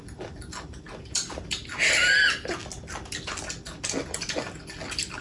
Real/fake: real